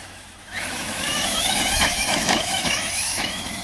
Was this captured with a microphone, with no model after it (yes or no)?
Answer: no